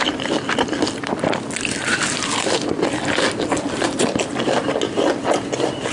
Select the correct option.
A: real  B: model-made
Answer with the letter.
A